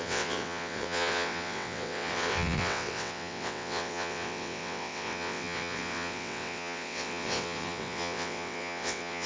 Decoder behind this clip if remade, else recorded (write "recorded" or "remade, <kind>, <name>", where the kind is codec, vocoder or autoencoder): remade, vocoder, WaveNeXt